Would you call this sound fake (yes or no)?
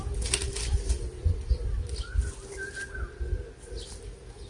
no